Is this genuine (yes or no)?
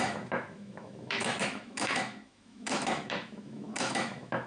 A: no